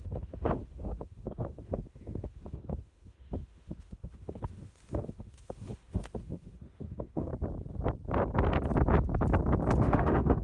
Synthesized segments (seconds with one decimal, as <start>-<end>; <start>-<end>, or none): 0.0-7.3; 9.8-10.4